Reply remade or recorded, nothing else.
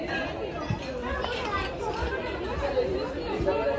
recorded